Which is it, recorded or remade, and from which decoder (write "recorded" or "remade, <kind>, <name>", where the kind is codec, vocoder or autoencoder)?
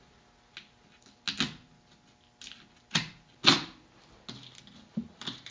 recorded